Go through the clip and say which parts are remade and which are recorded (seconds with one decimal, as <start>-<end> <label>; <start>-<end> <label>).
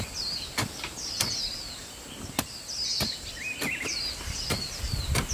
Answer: 0.0-5.3 recorded